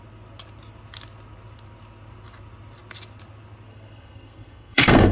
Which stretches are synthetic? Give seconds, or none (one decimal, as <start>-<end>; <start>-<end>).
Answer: 3.7-5.1